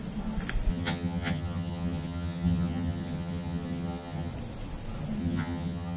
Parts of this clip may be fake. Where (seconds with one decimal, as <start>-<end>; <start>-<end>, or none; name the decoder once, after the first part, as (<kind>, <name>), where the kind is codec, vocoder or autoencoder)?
0.7-4.3 (vocoder, HiFi-GAN); 5.2-6.0